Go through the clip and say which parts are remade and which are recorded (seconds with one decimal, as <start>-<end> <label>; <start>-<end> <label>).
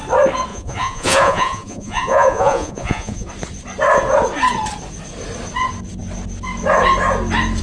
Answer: 0.0-0.5 recorded; 0.5-3.3 remade; 3.3-7.6 recorded